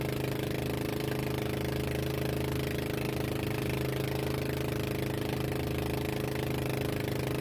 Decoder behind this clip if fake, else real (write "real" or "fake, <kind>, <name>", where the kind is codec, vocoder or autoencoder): real